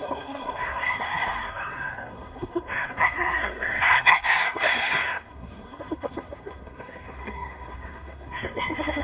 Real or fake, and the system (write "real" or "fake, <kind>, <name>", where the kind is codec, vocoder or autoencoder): fake, codec, SNAC